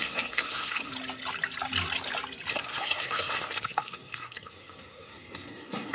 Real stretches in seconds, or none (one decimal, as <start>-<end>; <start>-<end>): 0.9-2.5